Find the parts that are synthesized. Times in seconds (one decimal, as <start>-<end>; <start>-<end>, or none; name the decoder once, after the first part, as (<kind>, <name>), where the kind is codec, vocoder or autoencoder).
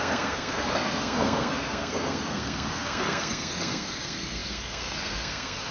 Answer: 0.0-5.7 (codec, SNAC)